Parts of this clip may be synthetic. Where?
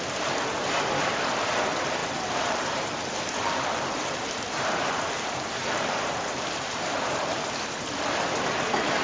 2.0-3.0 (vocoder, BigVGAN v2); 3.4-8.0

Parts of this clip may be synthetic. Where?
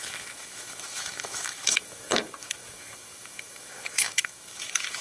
0.0-5.0 (autoencoder, DAC-VAE)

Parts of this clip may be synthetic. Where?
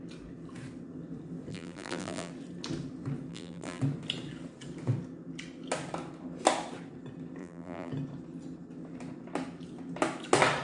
1.5-2.3 (vocoder, BigVGAN v2); 3.3-3.8; 7.4-7.9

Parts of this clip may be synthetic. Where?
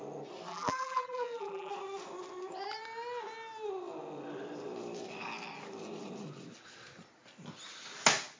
0.5-1.7 (vocoder, BigVGAN v2)